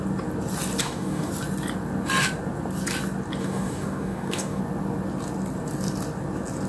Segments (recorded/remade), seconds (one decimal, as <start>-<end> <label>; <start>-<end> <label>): 0.0-0.8 recorded; 0.8-1.3 remade; 1.3-3.4 recorded; 3.4-4.6 remade; 4.6-6.7 recorded